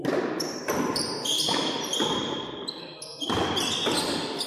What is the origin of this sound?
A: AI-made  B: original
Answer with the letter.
B